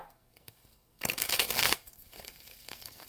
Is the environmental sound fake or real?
fake